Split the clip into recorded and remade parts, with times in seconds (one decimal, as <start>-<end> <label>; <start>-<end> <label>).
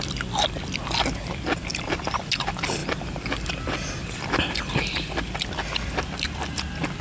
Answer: 0.0-1.7 recorded; 1.7-2.2 remade; 2.2-7.0 recorded